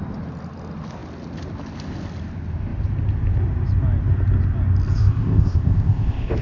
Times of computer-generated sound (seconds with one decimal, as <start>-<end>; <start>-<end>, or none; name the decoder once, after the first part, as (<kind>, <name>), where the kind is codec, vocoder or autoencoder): 5.0-6.4 (codec, ZipCodec)